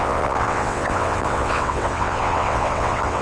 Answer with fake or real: fake